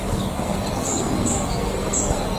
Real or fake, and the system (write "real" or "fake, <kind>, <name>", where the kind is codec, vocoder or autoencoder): fake, codec, SNAC